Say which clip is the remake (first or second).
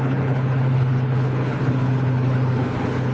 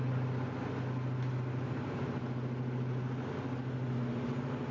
first